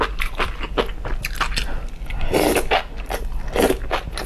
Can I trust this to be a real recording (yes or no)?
yes